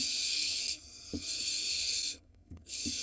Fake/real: fake